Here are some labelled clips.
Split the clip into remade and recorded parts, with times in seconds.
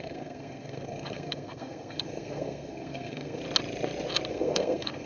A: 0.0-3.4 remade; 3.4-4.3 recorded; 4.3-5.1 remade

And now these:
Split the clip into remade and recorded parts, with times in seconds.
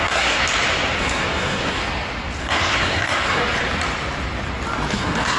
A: 0.0-0.4 remade; 0.4-1.0 recorded; 1.0-1.8 remade; 1.8-2.4 recorded; 2.4-3.4 remade; 3.4-4.9 recorded; 4.9-5.4 remade